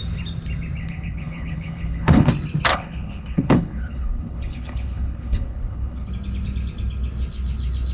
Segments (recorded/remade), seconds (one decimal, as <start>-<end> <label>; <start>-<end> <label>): 0.0-0.8 recorded; 0.8-2.3 remade; 2.3-2.7 recorded; 2.7-6.1 remade; 6.1-7.9 recorded